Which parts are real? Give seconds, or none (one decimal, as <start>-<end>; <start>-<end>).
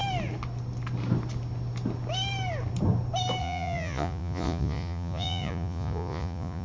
0.0-3.4